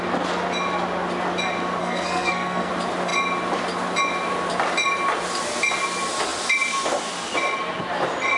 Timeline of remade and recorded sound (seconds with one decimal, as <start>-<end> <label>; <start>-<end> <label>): 0.0-1.8 recorded; 1.8-2.7 remade; 2.7-8.4 recorded